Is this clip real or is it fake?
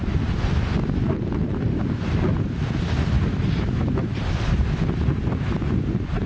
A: real